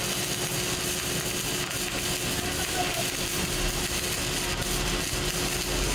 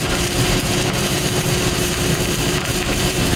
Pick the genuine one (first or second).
first